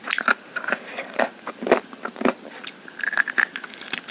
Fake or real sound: real